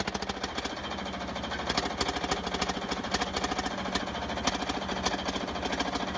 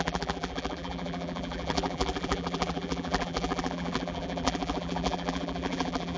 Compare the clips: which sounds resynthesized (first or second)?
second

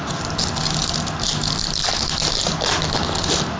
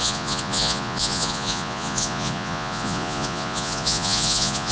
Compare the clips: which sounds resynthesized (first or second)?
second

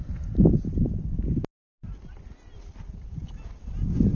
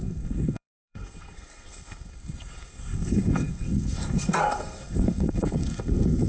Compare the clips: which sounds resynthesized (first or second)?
second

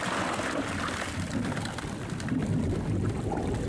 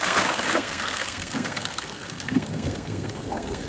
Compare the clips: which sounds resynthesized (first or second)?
second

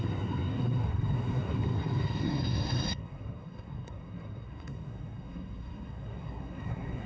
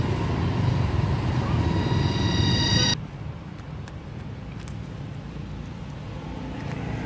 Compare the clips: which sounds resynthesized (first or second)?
first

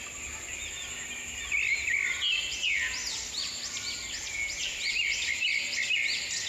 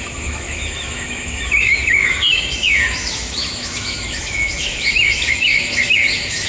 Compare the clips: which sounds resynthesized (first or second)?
second